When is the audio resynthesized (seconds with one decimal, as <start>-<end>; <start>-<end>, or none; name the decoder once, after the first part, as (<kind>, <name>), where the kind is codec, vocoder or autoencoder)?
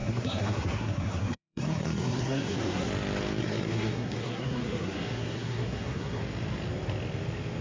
0.0-2.9 (codec, SNAC); 3.4-6.2